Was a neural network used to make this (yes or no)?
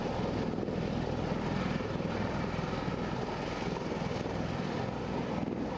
no